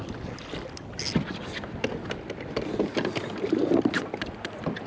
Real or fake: real